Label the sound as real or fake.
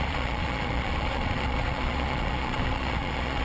fake